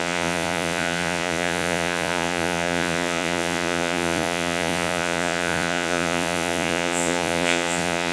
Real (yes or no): no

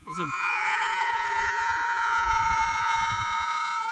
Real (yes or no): no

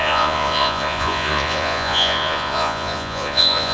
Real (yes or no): no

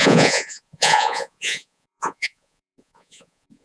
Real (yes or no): no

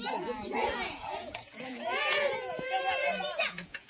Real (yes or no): no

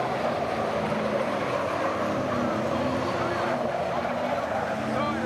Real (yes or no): yes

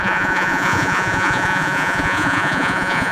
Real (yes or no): no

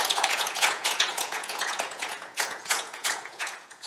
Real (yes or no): no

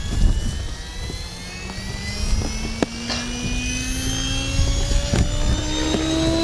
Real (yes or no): yes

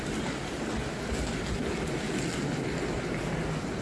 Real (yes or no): yes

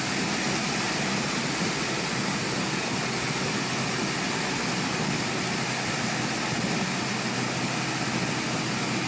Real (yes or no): yes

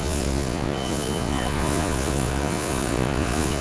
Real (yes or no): no